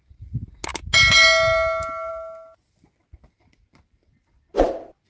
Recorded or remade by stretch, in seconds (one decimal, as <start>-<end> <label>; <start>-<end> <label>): 0.0-5.1 recorded